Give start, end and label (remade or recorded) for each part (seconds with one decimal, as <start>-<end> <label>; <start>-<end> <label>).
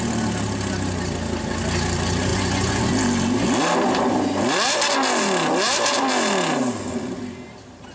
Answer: 0.0-2.3 recorded; 2.3-2.8 remade; 2.8-7.9 recorded